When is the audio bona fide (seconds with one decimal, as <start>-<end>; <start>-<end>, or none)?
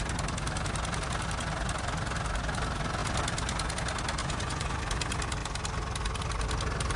0.0-4.2; 4.8-7.0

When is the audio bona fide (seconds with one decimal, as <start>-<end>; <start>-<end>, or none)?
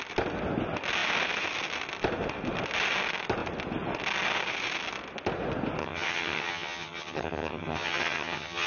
0.0-5.8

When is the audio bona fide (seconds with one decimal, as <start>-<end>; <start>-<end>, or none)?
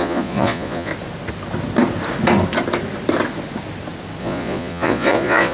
0.9-4.2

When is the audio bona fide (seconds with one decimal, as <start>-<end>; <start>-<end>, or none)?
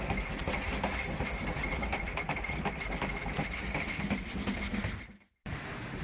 0.0-6.0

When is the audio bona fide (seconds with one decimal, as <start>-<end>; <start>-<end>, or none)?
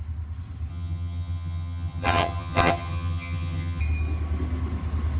0.0-0.7; 3.8-5.2